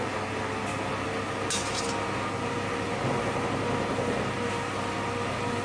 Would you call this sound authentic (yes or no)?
yes